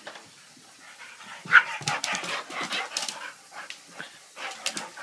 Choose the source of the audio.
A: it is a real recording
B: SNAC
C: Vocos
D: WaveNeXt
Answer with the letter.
A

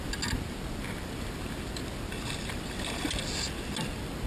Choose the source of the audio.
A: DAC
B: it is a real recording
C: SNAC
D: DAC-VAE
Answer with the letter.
B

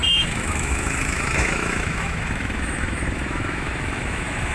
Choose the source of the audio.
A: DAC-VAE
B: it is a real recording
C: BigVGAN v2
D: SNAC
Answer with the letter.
A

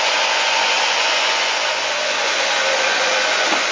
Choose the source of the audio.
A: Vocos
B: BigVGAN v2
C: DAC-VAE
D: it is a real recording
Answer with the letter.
A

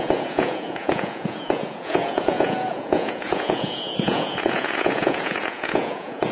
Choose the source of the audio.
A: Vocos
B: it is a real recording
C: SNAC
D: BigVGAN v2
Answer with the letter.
A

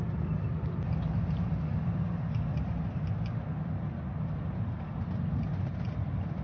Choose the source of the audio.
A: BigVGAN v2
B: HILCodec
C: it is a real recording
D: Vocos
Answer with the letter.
C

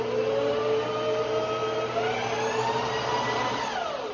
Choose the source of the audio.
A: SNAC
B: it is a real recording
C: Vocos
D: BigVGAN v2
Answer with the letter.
B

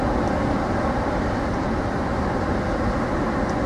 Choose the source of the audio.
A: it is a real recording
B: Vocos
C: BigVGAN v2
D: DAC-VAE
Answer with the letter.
A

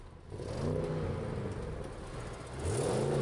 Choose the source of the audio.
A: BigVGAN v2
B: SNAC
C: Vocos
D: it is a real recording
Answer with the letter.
D